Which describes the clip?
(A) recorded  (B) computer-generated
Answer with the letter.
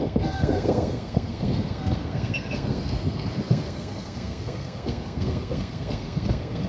B